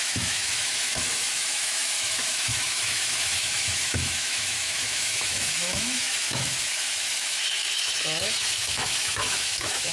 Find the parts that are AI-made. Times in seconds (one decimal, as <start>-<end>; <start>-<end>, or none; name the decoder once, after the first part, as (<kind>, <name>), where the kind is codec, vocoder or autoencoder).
0.0-9.9 (autoencoder, DAC-VAE)